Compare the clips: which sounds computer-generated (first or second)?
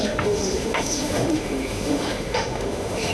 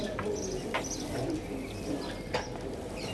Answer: first